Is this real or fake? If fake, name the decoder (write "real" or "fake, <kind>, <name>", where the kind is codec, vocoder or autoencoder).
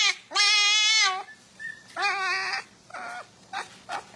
real